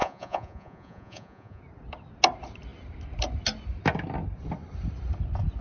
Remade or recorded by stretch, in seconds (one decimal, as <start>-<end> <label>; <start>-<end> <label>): 0.0-1.6 remade; 1.6-5.6 recorded